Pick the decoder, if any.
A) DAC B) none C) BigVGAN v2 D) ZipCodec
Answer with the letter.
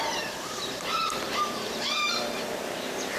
C